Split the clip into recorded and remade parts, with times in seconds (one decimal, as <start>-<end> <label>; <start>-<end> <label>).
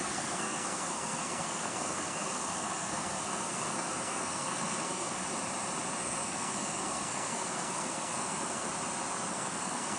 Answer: 0.0-5.2 remade; 5.2-6.0 recorded; 6.0-8.7 remade; 8.7-9.3 recorded; 9.3-10.0 remade